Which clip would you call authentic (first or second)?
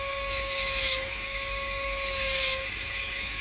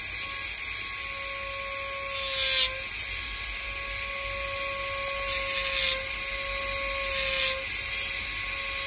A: second